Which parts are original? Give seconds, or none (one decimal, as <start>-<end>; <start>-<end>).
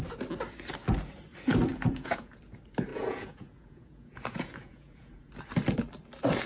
0.0-1.7; 2.4-2.9; 5.3-6.5